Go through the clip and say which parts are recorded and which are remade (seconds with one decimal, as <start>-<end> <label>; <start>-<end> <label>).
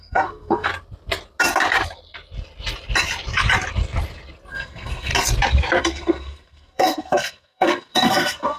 0.0-0.7 remade; 0.7-4.5 recorded; 4.5-5.1 remade; 5.1-5.8 recorded; 5.8-8.6 remade